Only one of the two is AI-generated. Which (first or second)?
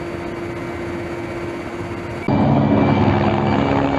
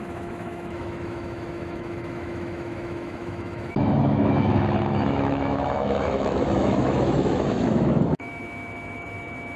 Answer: second